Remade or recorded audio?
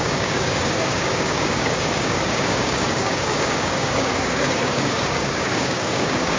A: remade